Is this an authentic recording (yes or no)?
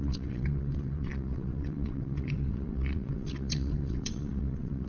no